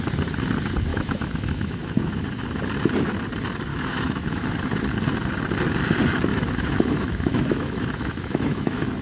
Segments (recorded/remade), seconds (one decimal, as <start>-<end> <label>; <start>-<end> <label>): 0.0-0.9 recorded; 0.9-2.1 remade; 2.1-3.7 recorded; 3.7-4.5 remade; 4.5-6.3 recorded; 6.3-9.0 remade